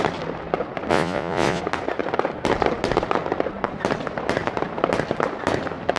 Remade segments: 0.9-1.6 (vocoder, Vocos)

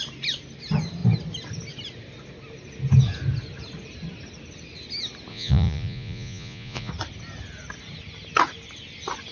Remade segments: 5.3-6.9 (vocoder, Vocos)

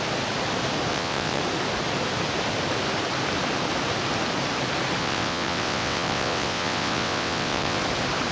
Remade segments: 0.9-1.4 (vocoder, WaveNeXt); 5.0-7.8